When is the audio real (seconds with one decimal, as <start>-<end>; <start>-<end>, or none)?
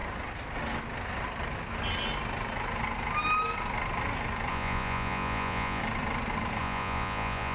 0.0-4.5; 5.8-6.6